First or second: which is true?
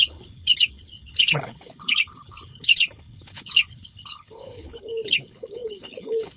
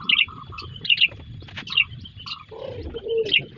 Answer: second